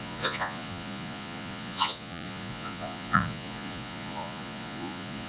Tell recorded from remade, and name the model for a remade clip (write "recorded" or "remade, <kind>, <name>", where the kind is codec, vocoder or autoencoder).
remade, vocoder, Vocos